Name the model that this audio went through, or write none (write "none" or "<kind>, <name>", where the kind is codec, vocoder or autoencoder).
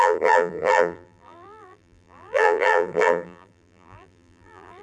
vocoder, BigVGAN v2